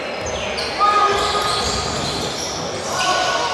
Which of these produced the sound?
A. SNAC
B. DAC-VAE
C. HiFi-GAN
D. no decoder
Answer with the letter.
D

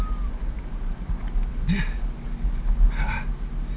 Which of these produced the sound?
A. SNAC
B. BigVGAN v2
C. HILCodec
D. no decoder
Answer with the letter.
D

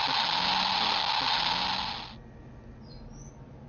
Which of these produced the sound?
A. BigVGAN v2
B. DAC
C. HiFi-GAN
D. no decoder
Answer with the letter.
D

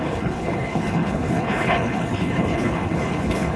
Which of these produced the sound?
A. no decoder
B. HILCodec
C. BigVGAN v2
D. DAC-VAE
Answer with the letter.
B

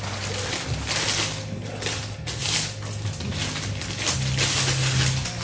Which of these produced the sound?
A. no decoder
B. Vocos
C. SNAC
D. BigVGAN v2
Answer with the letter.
A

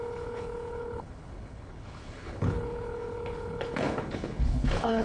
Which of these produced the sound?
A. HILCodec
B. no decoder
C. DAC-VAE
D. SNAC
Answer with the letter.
A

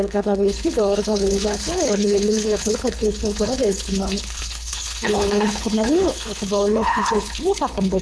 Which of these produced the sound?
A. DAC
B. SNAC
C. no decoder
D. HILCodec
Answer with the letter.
D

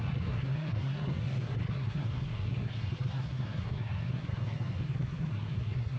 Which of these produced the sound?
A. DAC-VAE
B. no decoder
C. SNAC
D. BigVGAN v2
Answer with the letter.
C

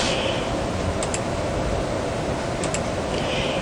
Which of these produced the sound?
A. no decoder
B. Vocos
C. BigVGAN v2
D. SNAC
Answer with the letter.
A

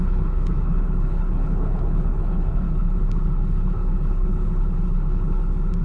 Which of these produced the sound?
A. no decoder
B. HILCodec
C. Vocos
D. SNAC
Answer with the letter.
B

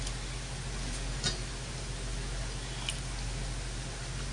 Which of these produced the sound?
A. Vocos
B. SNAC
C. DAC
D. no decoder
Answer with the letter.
D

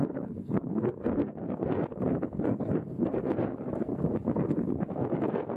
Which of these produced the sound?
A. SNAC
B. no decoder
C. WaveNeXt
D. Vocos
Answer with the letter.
A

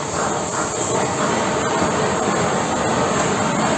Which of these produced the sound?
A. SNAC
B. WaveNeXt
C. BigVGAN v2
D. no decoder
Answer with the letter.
C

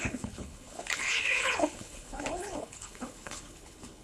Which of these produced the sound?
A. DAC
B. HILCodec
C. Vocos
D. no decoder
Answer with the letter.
B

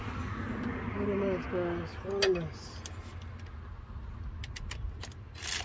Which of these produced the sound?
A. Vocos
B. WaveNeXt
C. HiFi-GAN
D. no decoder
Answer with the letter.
D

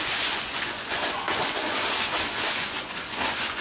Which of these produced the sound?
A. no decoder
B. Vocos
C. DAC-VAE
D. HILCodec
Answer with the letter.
B